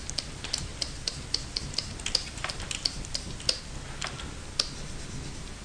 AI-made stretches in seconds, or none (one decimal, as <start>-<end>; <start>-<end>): 0.7-3.6